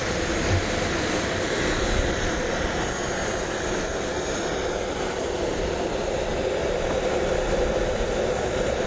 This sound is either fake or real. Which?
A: real